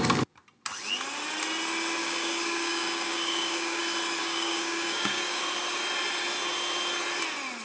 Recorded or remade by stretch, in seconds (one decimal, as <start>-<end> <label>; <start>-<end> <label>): 0.0-2.0 recorded; 2.0-3.8 remade; 3.8-4.2 recorded; 4.2-5.4 remade; 5.4-7.6 recorded